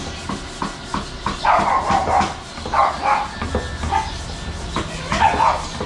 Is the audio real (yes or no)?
yes